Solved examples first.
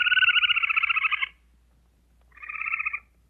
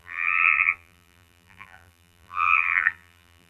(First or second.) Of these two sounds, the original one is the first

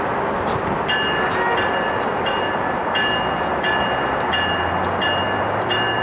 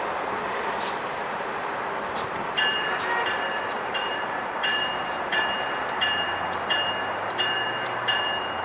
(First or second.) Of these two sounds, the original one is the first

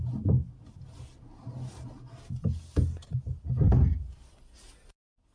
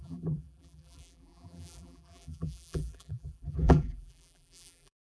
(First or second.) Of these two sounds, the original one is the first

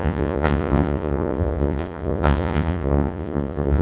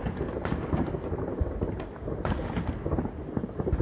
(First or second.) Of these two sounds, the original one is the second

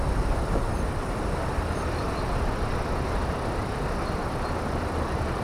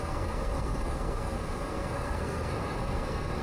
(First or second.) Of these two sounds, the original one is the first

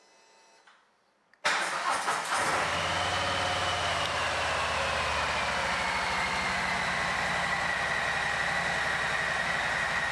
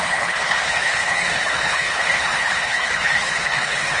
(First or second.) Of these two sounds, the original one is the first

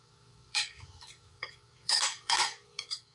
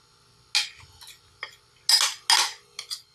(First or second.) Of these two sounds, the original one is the second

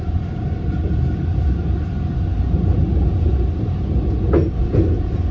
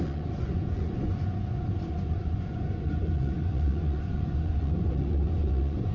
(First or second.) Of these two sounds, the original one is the first